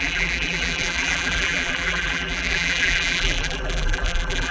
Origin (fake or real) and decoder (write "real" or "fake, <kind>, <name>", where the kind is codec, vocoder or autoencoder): fake, vocoder, BigVGAN v2